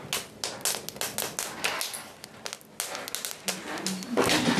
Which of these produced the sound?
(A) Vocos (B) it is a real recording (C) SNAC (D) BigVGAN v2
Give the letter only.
B